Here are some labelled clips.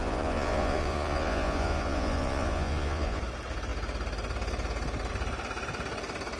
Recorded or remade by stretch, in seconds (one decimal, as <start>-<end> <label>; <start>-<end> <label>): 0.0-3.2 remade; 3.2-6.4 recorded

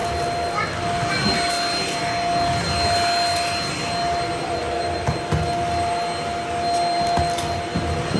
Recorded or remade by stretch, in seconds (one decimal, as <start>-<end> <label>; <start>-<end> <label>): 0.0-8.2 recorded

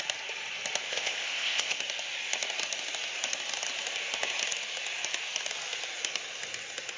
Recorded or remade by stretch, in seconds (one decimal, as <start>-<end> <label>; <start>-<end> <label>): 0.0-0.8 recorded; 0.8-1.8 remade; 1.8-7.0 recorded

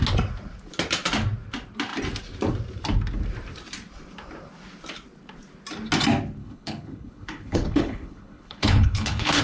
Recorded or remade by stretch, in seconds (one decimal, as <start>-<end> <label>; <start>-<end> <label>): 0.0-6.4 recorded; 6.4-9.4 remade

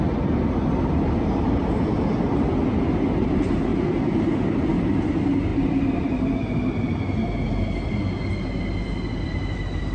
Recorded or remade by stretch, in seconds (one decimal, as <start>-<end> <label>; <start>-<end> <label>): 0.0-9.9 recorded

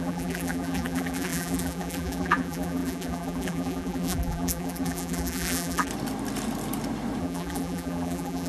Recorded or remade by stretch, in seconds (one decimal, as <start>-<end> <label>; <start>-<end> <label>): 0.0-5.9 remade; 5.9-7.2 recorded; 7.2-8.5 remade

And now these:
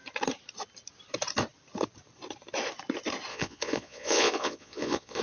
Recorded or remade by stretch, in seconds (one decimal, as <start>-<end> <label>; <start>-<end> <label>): 0.0-3.3 recorded; 3.3-5.2 remade

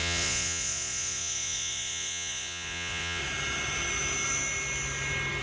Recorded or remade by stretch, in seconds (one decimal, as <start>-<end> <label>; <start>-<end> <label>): 0.0-3.2 remade; 3.2-5.4 recorded